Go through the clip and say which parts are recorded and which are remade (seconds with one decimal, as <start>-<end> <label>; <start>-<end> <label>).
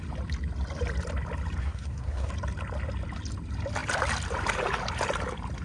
0.0-1.6 recorded; 1.6-2.3 remade; 2.3-5.6 recorded